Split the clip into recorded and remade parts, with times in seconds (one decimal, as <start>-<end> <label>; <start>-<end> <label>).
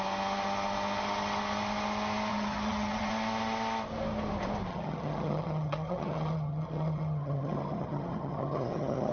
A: 0.0-2.3 recorded; 2.3-3.1 remade; 3.1-4.7 recorded; 4.7-9.1 remade